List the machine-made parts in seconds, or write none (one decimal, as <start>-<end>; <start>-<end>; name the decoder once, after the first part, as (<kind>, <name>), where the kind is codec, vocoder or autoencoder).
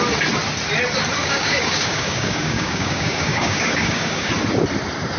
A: 1.2-4.3 (codec, DAC)